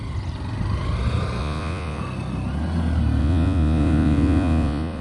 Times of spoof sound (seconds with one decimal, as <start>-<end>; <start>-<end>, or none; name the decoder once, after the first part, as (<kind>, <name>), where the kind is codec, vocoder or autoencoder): 1.4-2.0 (vocoder, Vocos); 3.2-5.0

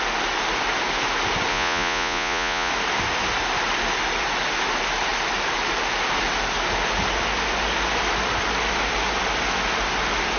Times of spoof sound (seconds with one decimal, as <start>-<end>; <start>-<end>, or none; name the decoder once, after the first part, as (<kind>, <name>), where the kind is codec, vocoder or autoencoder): 1.5-2.7 (vocoder, Vocos)

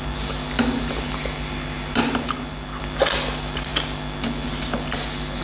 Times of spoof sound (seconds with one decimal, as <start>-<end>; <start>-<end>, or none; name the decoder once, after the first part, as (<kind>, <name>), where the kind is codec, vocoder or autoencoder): none

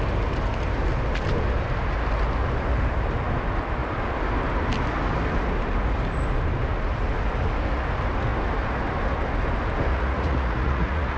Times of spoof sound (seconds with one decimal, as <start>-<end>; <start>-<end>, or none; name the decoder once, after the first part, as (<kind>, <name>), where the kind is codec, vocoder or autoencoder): 9.9-11.2 (vocoder, Vocos)

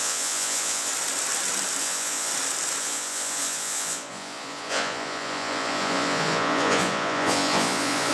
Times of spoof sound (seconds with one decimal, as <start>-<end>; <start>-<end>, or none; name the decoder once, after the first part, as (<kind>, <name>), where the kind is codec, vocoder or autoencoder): 0.0-0.9 (vocoder, Vocos); 1.8-2.3; 2.8-8.1

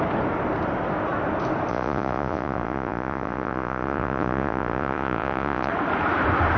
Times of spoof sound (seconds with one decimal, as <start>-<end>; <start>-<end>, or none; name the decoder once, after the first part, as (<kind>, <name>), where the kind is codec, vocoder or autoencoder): 1.7-5.7 (vocoder, Vocos)

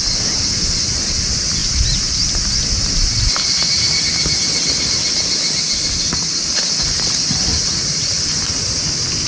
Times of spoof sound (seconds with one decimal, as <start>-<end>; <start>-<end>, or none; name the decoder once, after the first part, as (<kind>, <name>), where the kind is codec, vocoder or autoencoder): 7.5-8.1 (vocoder, Vocos)

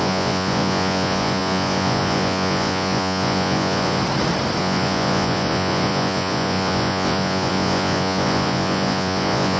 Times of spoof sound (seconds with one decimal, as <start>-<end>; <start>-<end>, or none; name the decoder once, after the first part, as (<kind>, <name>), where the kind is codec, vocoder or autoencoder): 0.0-4.0 (vocoder, Vocos); 4.6-9.6